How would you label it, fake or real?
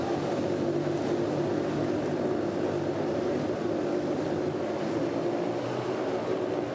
real